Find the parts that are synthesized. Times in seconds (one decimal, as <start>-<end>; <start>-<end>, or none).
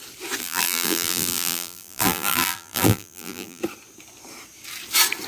0.4-3.6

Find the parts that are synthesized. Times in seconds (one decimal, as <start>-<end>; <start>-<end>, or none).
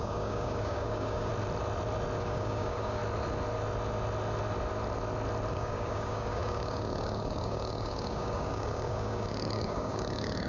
0.0-1.3; 2.2-3.0; 5.5-10.5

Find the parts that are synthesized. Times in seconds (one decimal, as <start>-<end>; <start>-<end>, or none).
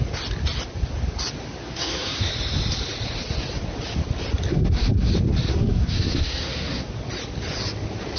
1.6-2.3; 4.5-5.1; 5.5-6.9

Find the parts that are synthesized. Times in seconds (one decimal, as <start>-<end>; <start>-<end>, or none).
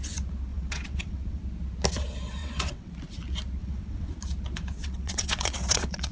0.5-1.4; 2.4-2.9; 3.6-4.1; 4.8-6.1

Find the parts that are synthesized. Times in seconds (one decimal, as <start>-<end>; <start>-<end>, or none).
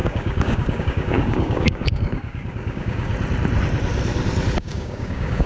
0.0-3.1; 4.6-5.5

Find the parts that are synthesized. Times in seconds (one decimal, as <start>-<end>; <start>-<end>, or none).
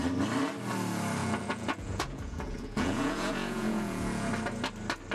1.2-4.3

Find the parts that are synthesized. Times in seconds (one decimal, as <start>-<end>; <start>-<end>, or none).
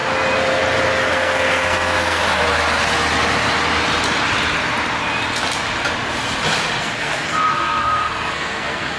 1.1-2.2; 6.8-9.0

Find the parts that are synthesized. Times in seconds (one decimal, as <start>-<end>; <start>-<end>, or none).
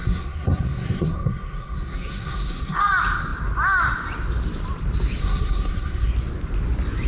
0.0-2.8; 5.2-6.1